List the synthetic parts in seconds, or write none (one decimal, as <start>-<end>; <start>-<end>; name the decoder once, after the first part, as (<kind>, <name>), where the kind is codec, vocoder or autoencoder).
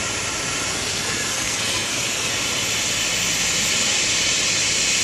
0.7-2.3 (codec, SNAC)